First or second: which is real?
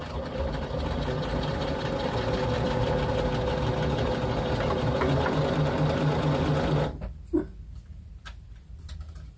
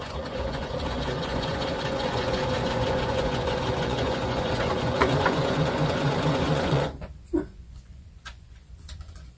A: first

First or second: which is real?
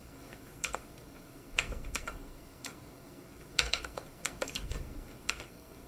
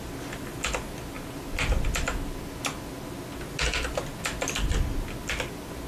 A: second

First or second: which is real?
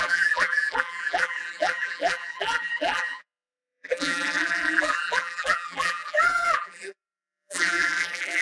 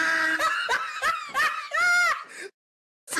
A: second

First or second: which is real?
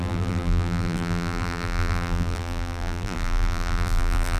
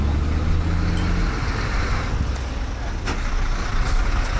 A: second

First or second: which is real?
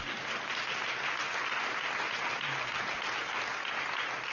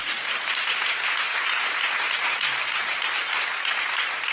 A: first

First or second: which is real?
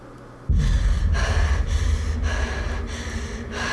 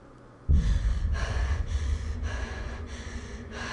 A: first